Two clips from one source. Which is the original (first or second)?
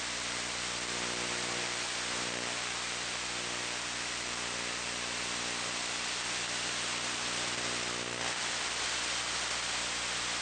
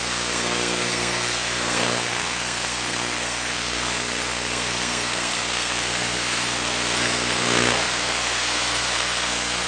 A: first